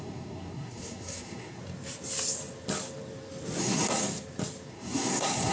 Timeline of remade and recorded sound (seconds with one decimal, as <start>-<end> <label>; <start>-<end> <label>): 0.0-1.6 remade; 1.6-3.6 recorded; 3.6-4.0 remade; 4.0-4.7 recorded; 4.7-5.5 remade